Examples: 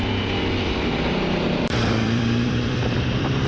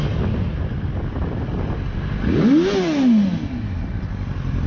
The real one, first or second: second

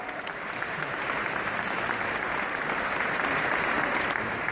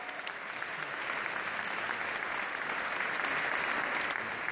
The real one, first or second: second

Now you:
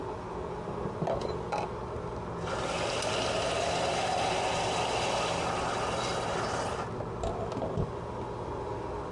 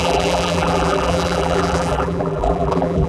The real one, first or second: first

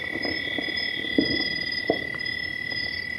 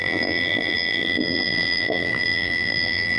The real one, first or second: first